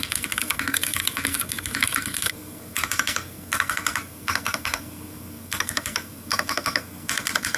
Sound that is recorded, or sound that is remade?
remade